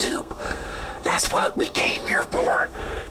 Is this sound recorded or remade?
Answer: remade